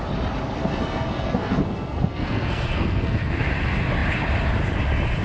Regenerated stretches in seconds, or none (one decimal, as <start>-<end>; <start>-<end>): 0.6-3.5

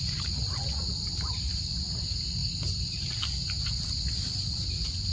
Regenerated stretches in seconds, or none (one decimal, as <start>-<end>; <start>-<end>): none

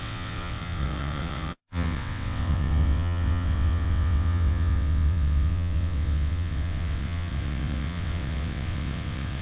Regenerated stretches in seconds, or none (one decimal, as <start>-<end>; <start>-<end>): 0.0-9.4

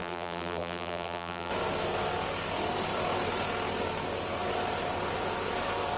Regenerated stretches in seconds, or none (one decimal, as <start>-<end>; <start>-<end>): 0.0-1.5